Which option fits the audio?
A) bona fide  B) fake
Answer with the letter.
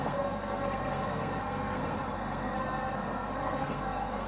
B